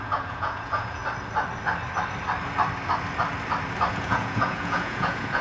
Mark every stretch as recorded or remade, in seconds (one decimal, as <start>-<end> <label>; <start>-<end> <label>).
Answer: 0.0-1.0 remade; 1.0-3.9 recorded; 3.9-5.4 remade